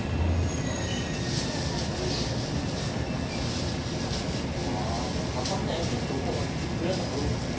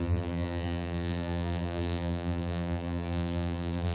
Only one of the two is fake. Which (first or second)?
second